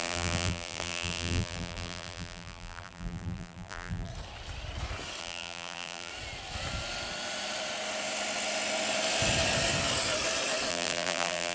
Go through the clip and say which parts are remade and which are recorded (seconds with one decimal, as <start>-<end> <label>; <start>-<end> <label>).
0.0-4.1 remade; 4.1-5.2 recorded; 5.2-6.1 remade; 6.1-10.7 recorded; 10.7-11.5 remade